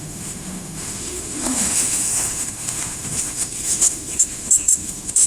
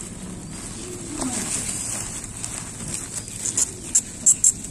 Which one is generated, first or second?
first